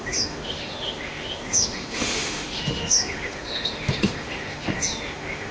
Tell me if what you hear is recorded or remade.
remade